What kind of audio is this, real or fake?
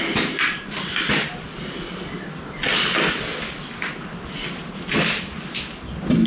real